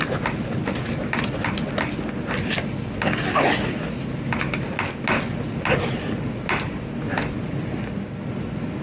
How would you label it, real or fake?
real